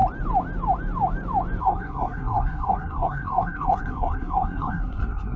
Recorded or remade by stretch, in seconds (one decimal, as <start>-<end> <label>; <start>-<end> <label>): 0.0-1.6 recorded; 1.6-5.4 remade